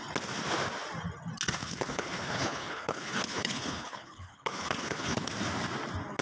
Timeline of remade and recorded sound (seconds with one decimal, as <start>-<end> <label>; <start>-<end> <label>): 0.0-1.6 recorded; 1.6-5.3 remade; 5.3-6.2 recorded